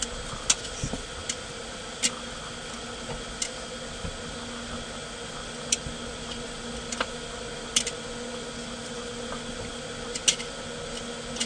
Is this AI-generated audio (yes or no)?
no